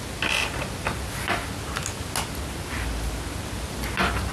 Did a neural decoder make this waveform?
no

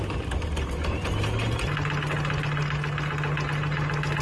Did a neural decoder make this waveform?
no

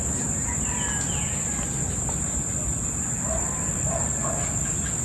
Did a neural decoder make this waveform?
no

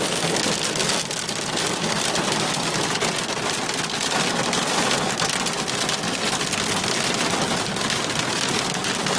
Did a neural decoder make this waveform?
no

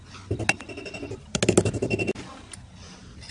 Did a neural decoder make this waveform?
no